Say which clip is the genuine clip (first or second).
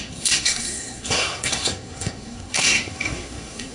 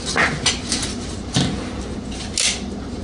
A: second